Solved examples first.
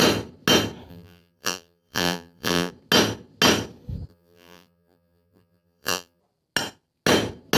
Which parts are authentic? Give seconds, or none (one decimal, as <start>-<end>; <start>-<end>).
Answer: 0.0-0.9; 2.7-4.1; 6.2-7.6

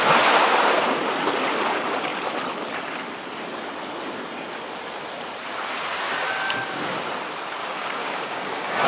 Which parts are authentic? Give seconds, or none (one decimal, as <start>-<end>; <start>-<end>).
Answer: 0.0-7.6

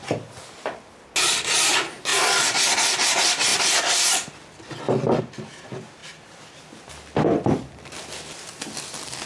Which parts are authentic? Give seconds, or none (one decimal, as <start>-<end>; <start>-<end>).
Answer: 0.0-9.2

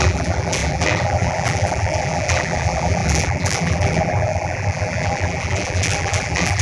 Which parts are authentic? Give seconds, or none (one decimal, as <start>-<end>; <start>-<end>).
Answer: none

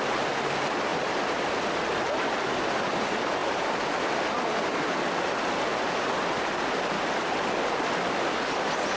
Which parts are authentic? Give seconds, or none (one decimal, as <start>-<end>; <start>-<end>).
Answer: 0.0-9.0

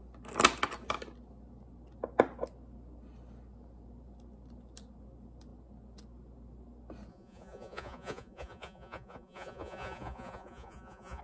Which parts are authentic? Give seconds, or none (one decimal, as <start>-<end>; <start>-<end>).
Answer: 0.0-7.1